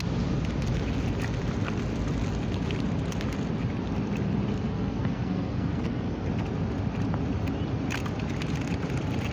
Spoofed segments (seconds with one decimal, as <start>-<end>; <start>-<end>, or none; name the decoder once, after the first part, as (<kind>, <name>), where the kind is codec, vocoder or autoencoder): 4.5-6.3 (codec, SNAC)